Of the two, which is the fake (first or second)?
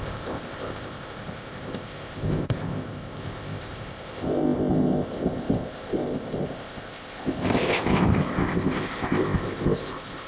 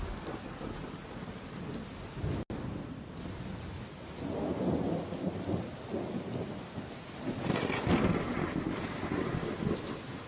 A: first